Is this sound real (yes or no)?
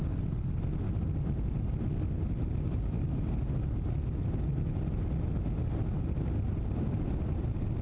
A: yes